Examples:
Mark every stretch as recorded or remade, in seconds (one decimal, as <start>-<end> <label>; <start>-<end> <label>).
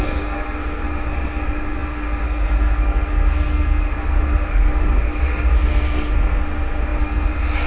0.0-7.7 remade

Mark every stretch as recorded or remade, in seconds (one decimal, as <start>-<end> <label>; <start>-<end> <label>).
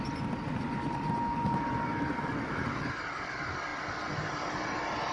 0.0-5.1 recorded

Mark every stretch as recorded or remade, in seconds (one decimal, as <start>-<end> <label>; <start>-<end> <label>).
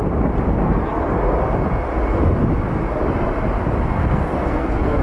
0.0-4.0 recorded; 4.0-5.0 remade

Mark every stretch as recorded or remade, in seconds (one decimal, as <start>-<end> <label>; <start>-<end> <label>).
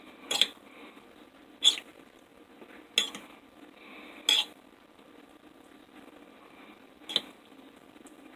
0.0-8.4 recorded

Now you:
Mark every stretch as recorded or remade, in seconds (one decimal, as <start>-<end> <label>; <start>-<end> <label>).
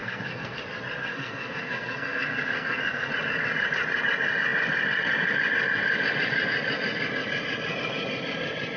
0.0-0.6 remade; 0.6-1.0 recorded; 1.0-3.1 remade; 3.1-8.8 recorded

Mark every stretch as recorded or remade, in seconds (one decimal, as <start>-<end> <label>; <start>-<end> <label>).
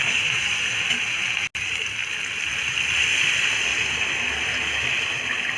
0.0-5.6 recorded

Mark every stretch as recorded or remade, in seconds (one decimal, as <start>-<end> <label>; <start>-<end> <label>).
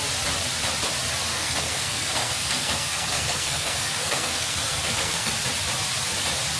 0.0-1.3 recorded; 1.3-5.3 remade; 5.3-6.6 recorded